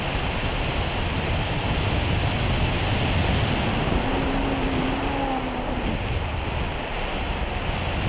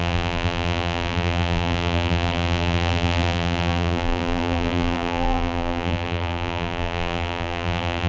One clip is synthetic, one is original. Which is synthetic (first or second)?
second